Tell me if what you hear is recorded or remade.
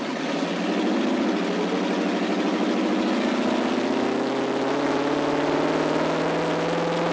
recorded